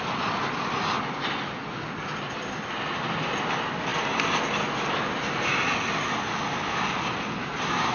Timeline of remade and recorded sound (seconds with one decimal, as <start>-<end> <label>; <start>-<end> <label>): 0.0-7.9 recorded